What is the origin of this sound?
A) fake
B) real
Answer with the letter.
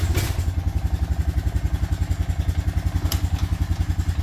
B